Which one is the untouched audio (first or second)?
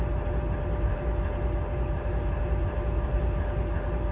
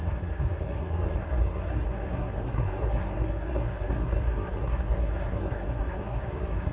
first